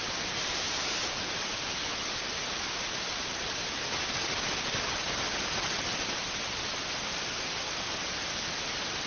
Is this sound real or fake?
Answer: real